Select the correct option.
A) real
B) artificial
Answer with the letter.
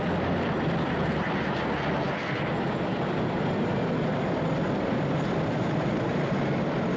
B